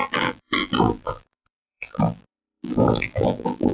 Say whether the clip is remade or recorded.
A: remade